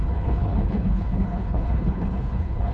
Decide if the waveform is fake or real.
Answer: fake